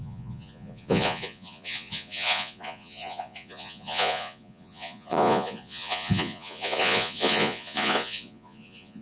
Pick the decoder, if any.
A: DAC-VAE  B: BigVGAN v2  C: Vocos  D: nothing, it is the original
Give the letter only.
C